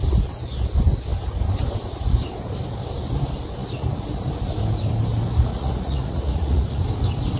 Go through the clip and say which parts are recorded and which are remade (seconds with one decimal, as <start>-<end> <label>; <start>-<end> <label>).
0.0-5.5 recorded; 5.5-6.8 remade; 6.8-7.4 recorded